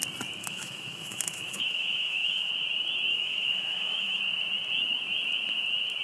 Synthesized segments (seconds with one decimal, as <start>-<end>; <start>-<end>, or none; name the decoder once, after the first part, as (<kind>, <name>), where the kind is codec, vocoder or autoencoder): 0.4-2.5 (autoencoder, DAC-VAE); 3.1-4.2